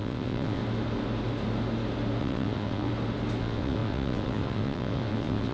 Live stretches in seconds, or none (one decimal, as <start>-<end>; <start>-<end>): 0.6-2.2; 2.9-3.4